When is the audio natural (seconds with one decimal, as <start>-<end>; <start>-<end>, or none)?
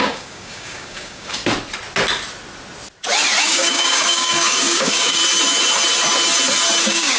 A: 1.4-3.4; 5.2-6.8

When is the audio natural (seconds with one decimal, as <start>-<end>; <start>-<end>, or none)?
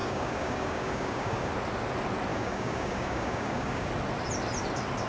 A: 1.5-2.3; 3.9-5.1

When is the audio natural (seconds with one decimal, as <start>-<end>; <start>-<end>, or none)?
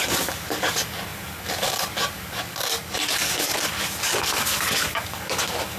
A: none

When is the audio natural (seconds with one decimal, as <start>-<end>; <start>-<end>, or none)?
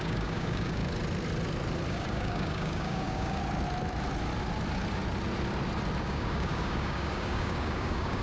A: 0.8-1.9; 3.4-6.0